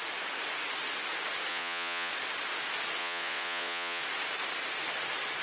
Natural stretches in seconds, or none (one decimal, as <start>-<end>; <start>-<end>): 0.0-1.5; 2.1-3.0; 4.0-5.4